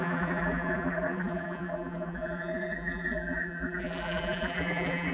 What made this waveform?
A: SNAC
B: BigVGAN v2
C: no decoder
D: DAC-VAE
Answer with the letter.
B